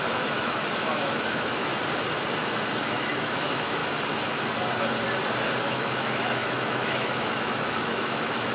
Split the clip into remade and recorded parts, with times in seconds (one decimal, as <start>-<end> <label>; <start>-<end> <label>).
0.0-1.7 remade; 1.7-2.8 recorded; 2.8-3.8 remade; 3.8-5.6 recorded; 5.6-8.5 remade